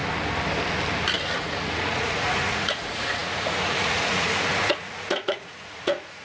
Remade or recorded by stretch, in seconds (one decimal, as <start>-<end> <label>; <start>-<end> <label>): 0.0-1.4 recorded; 1.4-6.2 remade